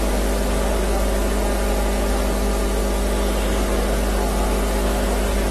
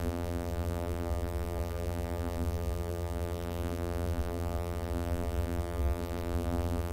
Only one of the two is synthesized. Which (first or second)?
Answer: second